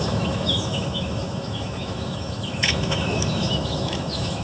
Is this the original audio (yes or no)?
no